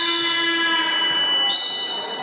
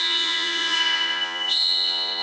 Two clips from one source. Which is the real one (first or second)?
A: first